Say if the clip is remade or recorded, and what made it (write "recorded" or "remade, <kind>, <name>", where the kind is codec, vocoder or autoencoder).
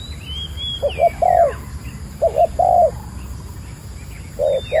recorded